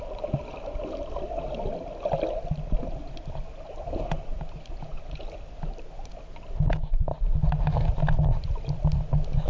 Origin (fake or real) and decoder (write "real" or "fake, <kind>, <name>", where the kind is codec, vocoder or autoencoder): real